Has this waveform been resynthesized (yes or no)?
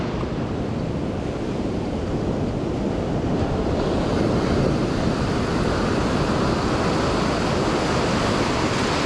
no